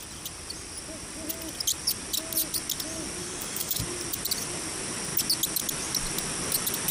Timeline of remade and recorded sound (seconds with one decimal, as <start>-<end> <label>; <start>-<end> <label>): 0.0-3.2 recorded; 3.2-3.8 remade; 3.8-6.9 recorded